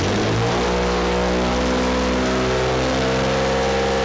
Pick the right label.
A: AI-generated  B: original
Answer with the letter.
B